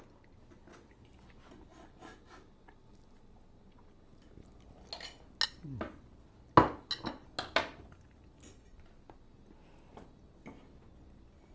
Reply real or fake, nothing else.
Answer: real